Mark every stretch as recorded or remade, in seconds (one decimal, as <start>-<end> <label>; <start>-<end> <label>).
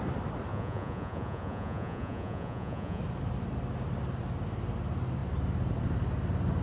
0.0-0.5 recorded; 0.5-3.0 remade; 3.0-6.6 recorded